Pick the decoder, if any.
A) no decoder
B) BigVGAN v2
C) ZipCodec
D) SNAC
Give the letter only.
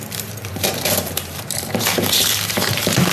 B